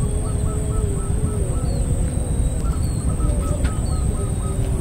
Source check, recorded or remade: recorded